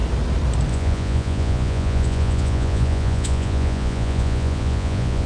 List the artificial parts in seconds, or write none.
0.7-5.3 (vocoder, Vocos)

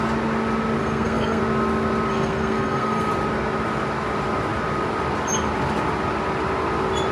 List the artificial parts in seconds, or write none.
0.8-1.4 (codec, SNAC); 2.1-3.1

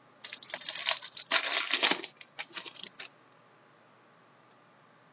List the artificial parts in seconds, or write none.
none

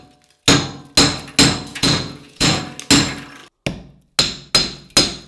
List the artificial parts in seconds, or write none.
1.7-2.6 (vocoder, Vocos)

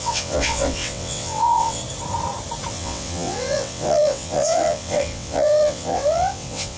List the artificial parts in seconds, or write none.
0.0-1.8 (vocoder, WaveNeXt); 2.7-6.8

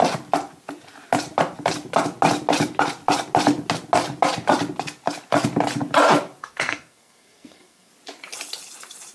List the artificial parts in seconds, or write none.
6.4-7.9 (codec, SNAC)

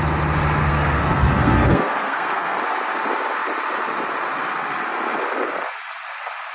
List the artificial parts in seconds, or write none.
0.6-2.6 (codec, SNAC)

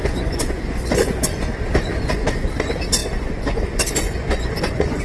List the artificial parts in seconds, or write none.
0.0-1.2 (vocoder, Vocos); 1.9-2.5; 3.0-5.0